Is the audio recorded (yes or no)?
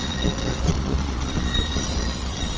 no